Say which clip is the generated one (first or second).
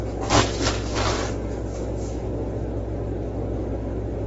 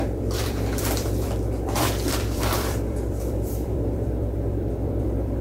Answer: second